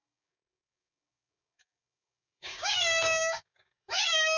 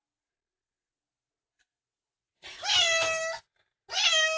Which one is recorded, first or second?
second